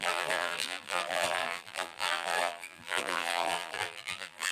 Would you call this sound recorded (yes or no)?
no